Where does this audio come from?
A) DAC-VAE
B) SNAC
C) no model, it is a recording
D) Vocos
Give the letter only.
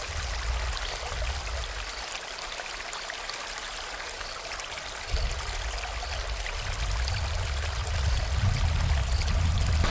C